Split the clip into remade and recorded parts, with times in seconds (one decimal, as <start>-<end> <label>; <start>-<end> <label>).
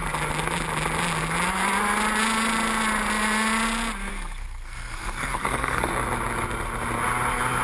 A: 0.0-4.1 recorded; 4.1-5.9 remade; 5.9-7.6 recorded